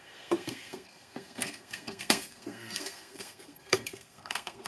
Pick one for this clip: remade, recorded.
remade